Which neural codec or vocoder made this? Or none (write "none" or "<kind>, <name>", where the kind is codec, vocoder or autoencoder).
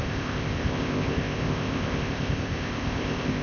codec, ZipCodec